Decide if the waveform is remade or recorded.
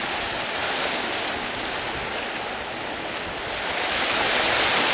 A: recorded